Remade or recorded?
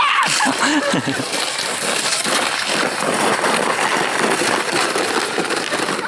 recorded